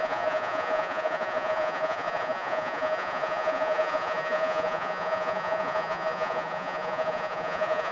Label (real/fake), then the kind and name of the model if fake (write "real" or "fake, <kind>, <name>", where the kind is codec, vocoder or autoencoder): fake, vocoder, Vocos